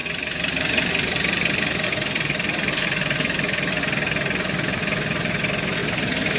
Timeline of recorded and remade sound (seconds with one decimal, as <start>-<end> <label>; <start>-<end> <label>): 0.0-3.8 remade; 3.8-5.8 recorded; 5.8-6.4 remade